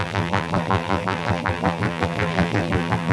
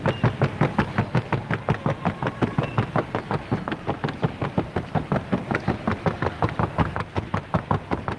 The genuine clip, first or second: second